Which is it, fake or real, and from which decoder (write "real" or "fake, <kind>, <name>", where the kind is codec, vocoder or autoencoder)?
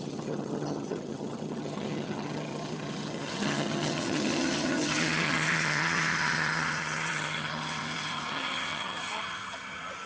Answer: fake, vocoder, HiFi-GAN